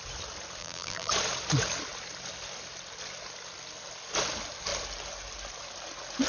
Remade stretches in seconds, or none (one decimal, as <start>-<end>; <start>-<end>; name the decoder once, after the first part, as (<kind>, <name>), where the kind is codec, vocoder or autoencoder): 0.6-1.1 (vocoder, BigVGAN v2)